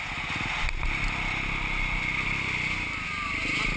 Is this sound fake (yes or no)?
no